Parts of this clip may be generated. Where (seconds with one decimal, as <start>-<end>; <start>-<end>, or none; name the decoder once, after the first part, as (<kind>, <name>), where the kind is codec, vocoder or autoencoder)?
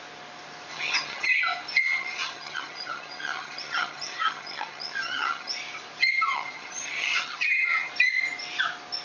0.7-1.4 (vocoder, HiFi-GAN); 1.8-5.5; 6.3-7.9